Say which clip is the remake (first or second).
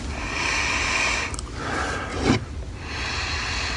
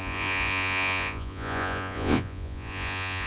second